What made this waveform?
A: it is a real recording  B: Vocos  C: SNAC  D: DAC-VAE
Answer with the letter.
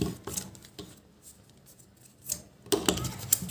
A